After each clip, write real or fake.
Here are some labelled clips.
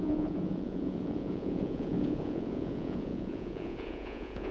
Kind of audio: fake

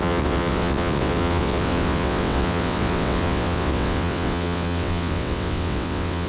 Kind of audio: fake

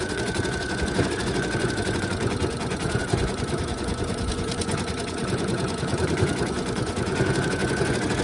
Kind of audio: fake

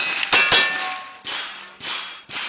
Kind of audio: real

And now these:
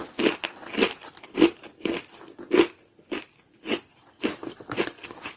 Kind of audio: real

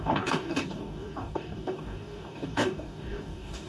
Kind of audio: fake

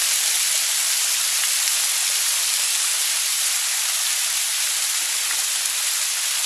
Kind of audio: real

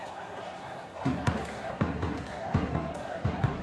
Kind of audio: fake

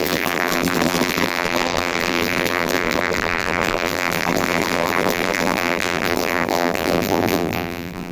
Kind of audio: fake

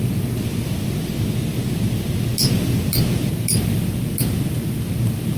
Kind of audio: real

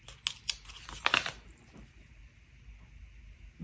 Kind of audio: real